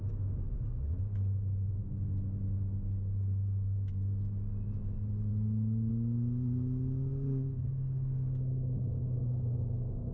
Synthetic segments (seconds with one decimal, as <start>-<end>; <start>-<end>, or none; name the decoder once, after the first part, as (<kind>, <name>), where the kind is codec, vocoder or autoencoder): none